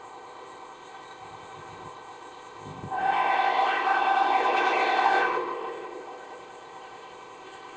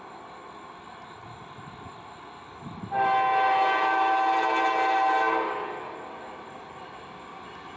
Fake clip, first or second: first